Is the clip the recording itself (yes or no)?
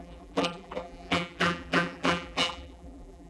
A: no